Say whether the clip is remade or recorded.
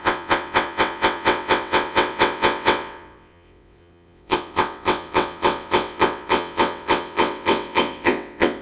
remade